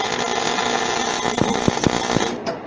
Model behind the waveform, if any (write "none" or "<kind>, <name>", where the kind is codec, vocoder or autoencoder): none